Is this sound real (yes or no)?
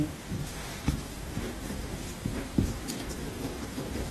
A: no